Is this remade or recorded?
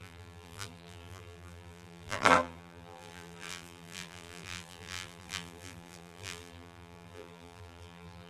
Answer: remade